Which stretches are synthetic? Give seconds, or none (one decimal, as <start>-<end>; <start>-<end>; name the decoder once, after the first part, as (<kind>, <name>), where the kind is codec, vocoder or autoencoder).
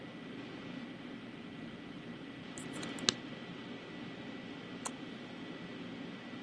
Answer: 0.0-2.6 (vocoder, BigVGAN v2)